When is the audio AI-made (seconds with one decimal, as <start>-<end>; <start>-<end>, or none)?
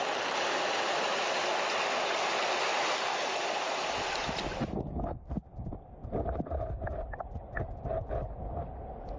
none